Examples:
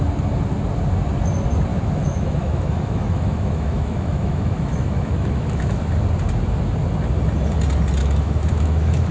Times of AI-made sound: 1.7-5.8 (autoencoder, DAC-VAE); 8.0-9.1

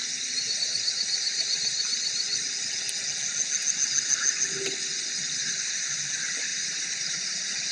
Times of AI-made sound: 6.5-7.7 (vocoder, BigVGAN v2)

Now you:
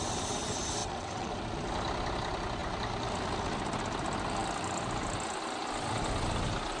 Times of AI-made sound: 0.8-1.3 (vocoder, WaveNeXt)